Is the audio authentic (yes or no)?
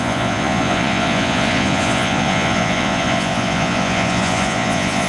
no